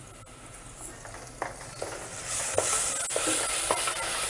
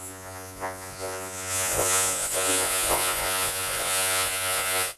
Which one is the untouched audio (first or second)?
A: first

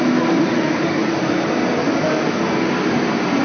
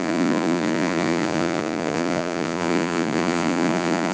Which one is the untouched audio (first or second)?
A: first